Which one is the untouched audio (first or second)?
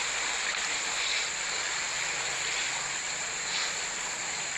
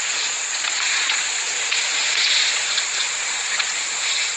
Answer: first